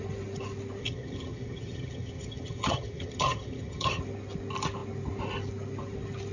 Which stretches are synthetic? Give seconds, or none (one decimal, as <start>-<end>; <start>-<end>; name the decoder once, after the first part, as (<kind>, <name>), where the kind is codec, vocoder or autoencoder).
0.8-4.0 (vocoder, HiFi-GAN)